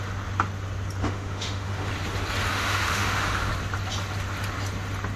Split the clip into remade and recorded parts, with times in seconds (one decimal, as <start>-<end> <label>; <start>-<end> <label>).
0.0-1.0 recorded; 1.0-1.9 remade; 1.9-2.5 recorded; 2.5-3.5 remade; 3.5-5.2 recorded